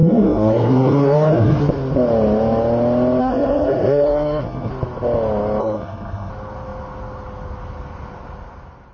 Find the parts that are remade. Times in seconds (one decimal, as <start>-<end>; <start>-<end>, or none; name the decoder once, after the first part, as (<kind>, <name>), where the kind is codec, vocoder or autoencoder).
0.0-1.6 (codec, SNAC); 3.2-4.7; 5.6-6.3